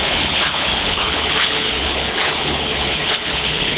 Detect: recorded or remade remade